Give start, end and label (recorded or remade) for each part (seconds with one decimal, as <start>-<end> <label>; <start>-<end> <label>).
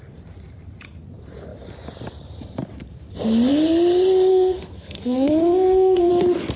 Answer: 0.0-4.3 recorded; 4.3-6.1 remade; 6.1-6.6 recorded